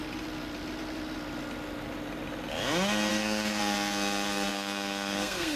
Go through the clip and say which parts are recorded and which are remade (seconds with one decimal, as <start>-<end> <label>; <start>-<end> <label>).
0.0-3.1 recorded; 3.1-3.6 remade; 3.6-4.5 recorded; 4.5-5.6 remade